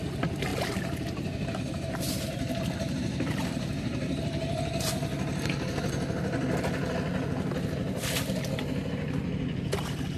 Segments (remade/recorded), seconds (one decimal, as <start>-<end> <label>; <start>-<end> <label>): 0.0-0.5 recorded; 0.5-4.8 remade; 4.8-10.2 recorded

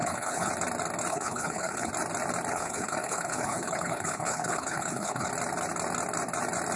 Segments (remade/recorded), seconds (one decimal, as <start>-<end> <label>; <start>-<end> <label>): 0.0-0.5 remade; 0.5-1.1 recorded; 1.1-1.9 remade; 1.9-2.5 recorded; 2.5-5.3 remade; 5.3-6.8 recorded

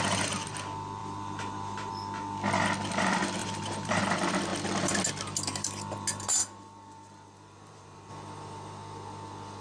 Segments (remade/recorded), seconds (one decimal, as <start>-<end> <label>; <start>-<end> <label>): 0.0-1.0 recorded; 1.0-1.9 remade; 1.9-3.4 recorded; 3.4-4.0 remade; 4.0-6.4 recorded; 6.4-8.1 remade; 8.1-9.6 recorded

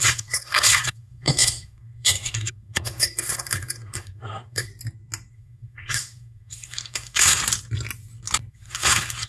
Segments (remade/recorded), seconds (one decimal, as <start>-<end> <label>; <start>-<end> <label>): 0.0-4.7 remade; 4.7-5.3 recorded; 5.3-7.4 remade; 7.4-8.5 recorded; 8.5-9.3 remade